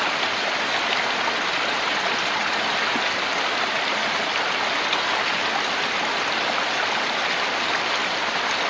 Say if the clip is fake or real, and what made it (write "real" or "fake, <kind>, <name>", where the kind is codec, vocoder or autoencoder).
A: real